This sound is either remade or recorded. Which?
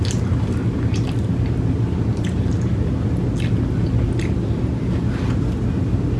recorded